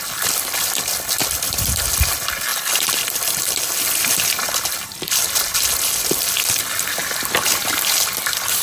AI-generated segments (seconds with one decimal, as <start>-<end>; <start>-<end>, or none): none

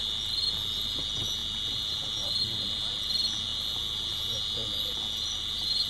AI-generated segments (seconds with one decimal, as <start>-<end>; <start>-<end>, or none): none

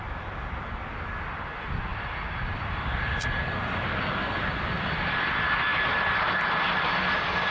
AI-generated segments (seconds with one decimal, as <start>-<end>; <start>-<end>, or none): 5.7-6.4

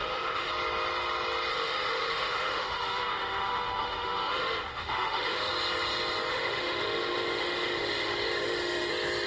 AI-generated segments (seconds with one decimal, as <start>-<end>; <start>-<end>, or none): 0.0-0.5; 1.5-5.5; 6.3-8.9

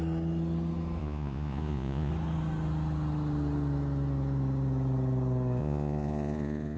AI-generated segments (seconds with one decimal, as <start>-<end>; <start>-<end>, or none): 1.0-2.1; 5.6-6.8